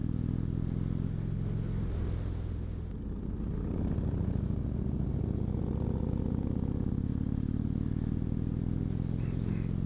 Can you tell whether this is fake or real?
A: real